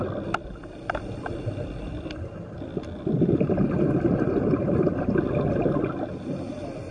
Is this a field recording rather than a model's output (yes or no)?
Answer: yes